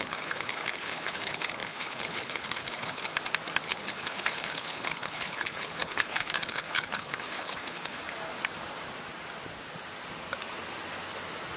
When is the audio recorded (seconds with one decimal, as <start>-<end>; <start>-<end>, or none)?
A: 3.1-3.7; 8.0-11.6